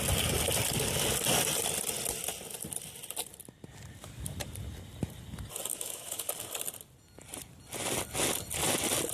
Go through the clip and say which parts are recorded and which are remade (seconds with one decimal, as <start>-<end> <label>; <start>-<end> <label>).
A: 0.0-5.7 recorded; 5.7-6.3 remade; 6.3-9.1 recorded